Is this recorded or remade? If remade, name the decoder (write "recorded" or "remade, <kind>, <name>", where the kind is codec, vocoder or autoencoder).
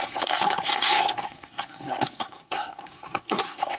remade, codec, SNAC